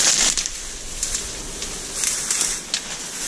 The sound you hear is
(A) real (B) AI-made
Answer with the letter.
A